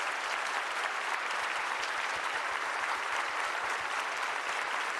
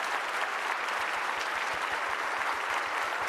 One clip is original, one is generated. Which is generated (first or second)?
first